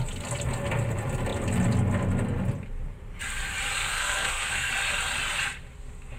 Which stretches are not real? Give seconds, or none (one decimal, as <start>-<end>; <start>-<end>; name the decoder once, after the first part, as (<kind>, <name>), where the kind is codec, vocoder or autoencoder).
3.8-4.7 (codec, SNAC)